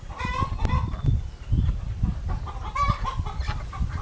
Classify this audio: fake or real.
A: real